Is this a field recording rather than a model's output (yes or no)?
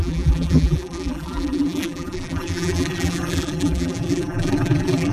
no